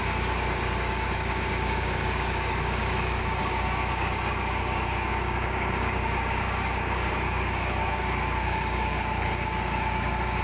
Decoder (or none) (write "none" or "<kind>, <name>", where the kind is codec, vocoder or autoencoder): codec, DAC